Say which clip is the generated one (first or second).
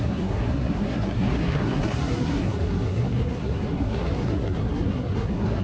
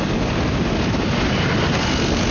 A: first